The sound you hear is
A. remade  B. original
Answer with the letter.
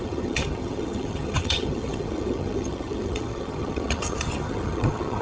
A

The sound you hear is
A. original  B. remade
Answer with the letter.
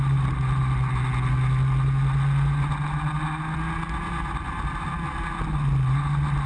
A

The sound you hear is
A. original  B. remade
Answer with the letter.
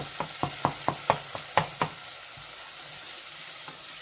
A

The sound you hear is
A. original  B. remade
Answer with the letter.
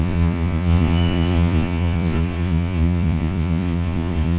B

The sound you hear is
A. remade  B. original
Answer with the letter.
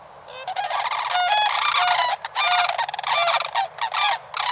B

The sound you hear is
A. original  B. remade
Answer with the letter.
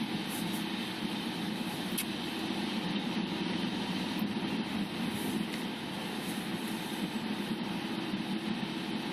A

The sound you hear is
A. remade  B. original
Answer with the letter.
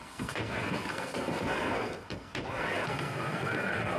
A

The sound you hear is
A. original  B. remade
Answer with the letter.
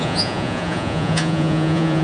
B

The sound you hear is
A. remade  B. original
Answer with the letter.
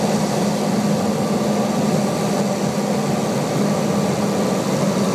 B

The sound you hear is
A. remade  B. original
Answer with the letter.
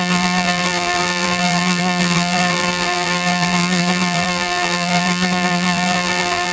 A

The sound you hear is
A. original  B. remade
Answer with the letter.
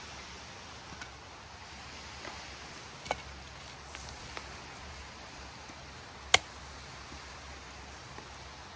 A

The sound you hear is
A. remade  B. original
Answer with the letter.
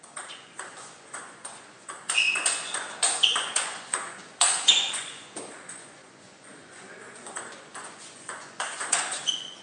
A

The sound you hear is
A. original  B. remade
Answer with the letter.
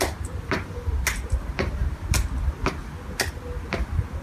A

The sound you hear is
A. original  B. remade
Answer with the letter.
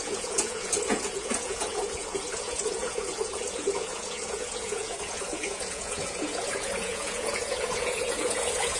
B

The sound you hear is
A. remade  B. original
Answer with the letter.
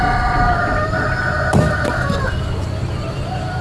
B